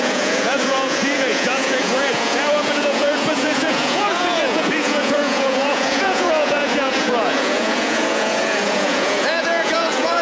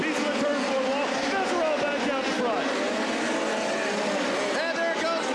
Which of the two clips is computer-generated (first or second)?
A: first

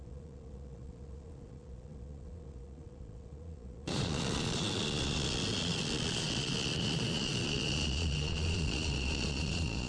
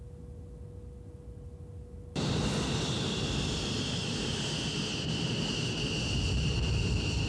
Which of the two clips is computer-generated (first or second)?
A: first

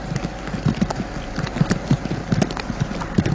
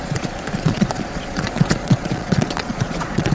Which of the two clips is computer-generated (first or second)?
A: second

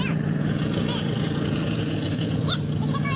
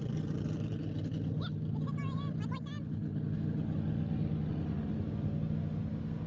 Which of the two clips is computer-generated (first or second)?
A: first